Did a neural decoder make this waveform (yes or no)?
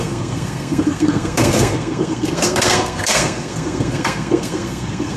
yes